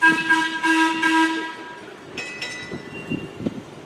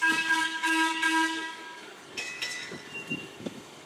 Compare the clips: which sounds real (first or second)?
first